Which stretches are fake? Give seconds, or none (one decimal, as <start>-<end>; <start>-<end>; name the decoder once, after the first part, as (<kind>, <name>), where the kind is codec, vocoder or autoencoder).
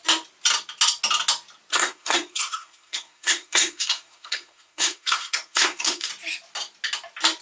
1.7-6.1 (codec, SNAC)